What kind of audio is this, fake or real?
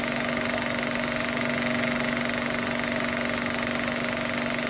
real